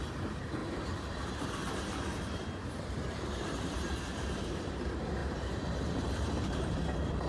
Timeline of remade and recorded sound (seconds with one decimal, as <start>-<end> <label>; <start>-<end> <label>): 0.0-0.6 recorded; 0.6-4.7 remade; 4.7-5.2 recorded; 5.2-6.6 remade; 6.6-7.3 recorded